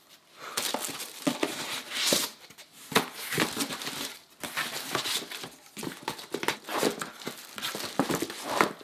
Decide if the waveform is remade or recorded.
remade